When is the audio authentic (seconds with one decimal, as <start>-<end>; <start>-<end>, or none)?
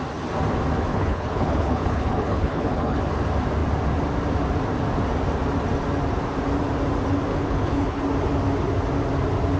0.0-0.9; 3.0-7.3; 8.0-9.6